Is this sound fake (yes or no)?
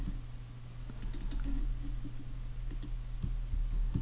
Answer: no